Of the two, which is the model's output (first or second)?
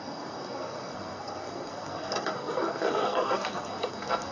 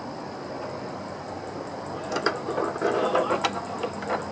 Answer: first